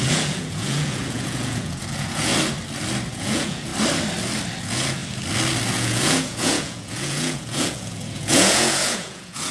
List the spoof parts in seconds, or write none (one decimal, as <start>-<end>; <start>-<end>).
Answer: 0.0-2.3; 3.1-3.7; 4.6-5.0; 5.7-9.5